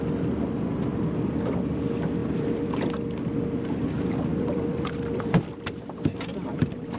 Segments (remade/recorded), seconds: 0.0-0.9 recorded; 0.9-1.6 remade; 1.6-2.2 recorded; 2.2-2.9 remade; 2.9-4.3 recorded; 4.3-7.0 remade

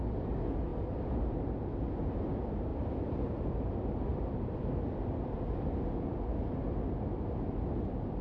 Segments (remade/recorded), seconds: 0.0-2.7 recorded; 2.7-3.5 remade; 3.5-4.1 recorded; 4.1-4.8 remade; 4.8-8.2 recorded

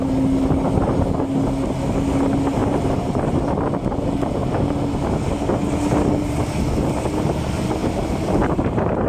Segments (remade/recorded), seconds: 0.0-2.6 recorded; 2.6-3.4 remade; 3.4-7.8 recorded; 7.8-9.1 remade